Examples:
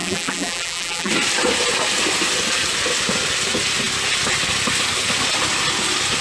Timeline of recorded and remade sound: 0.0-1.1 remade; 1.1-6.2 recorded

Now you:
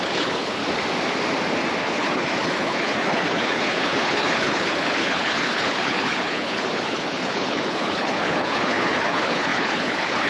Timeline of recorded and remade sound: 0.0-0.6 remade; 0.6-1.8 recorded; 1.8-10.3 remade

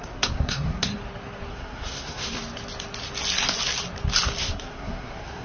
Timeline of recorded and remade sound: 0.0-0.9 remade; 0.9-1.5 recorded; 1.5-2.3 remade; 2.3-4.4 recorded; 4.4-5.4 remade

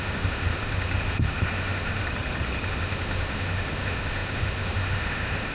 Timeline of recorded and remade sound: 0.0-2.0 remade; 2.0-2.7 recorded; 2.7-5.5 remade

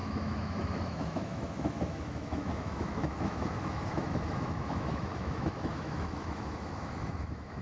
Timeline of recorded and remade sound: 0.0-7.6 remade